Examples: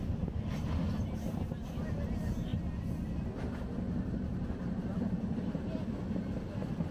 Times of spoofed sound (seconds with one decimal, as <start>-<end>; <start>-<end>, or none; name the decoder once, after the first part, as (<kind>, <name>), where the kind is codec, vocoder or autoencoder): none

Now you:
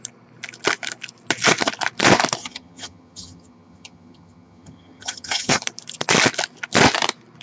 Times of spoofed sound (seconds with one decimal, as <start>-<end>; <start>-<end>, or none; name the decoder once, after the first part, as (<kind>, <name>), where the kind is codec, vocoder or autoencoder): 2.4-5.6 (vocoder, HiFi-GAN)

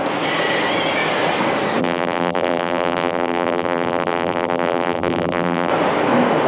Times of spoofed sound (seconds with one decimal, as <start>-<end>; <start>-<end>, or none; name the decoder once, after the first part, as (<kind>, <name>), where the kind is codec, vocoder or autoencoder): 1.8-5.7 (vocoder, BigVGAN v2)

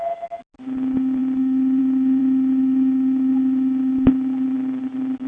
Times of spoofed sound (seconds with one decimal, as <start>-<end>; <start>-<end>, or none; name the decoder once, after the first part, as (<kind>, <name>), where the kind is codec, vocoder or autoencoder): none